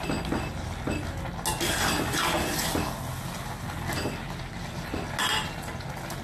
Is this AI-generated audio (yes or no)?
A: no